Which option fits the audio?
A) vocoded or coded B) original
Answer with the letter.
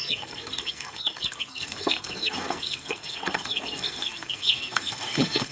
A